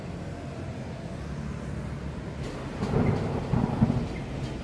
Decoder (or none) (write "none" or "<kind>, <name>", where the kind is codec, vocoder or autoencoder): none